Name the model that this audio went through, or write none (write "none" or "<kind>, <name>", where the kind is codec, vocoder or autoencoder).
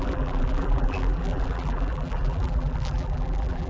vocoder, BigVGAN v2